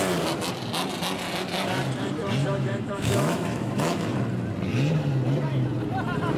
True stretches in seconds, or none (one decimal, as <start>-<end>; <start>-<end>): 0.0-2.4; 4.1-6.4